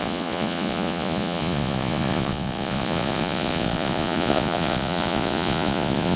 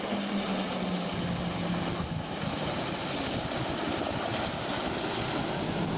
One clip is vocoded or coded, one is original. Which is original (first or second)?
second